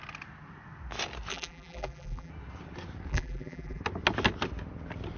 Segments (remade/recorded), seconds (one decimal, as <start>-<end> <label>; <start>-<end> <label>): 0.0-1.3 recorded; 1.3-2.3 remade; 2.3-3.1 recorded; 3.1-3.8 remade; 3.8-5.2 recorded